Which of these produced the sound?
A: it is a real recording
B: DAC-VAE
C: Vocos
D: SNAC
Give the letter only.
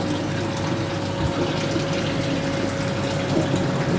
A